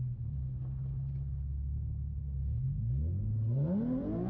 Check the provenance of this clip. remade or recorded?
recorded